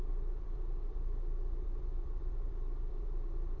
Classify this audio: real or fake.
fake